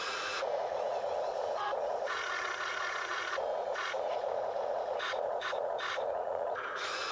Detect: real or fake fake